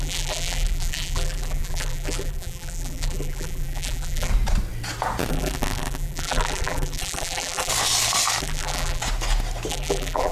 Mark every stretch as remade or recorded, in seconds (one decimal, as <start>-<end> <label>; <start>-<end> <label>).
0.0-4.3 remade; 4.3-5.3 recorded; 5.3-7.7 remade; 7.7-8.4 recorded; 8.4-9.0 remade; 9.0-9.7 recorded; 9.7-10.3 remade